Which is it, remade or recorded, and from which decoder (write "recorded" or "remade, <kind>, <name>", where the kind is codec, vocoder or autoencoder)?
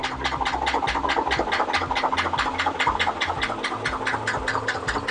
recorded